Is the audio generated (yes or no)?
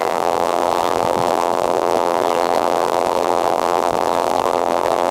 yes